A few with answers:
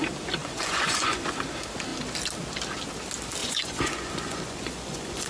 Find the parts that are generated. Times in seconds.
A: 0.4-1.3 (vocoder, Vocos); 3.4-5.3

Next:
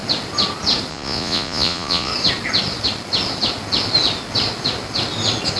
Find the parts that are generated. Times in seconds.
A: 0.9-2.1 (vocoder, Vocos)